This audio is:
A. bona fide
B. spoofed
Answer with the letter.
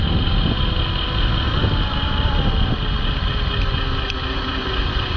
A